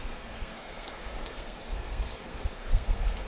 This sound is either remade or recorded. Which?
remade